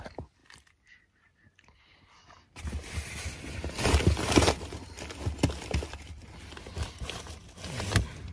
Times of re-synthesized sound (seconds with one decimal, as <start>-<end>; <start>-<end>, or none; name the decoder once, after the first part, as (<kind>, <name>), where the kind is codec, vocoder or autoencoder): none